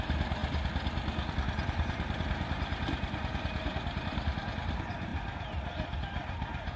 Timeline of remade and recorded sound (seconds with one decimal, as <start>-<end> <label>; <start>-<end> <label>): 0.0-0.4 remade; 0.4-1.3 recorded; 1.3-6.8 remade